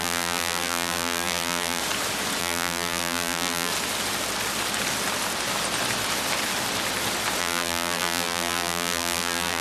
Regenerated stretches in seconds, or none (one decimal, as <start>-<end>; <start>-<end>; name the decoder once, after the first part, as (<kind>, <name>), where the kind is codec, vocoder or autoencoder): 0.0-1.8 (vocoder, BigVGAN v2); 2.4-3.7; 7.4-9.6